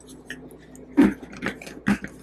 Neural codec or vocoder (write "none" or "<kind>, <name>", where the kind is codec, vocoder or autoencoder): none